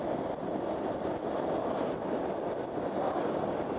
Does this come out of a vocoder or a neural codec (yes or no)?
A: yes